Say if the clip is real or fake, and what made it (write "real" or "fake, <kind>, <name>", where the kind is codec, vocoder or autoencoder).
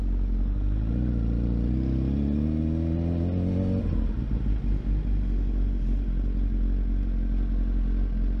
real